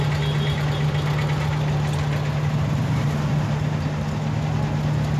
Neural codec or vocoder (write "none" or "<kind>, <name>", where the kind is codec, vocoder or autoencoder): none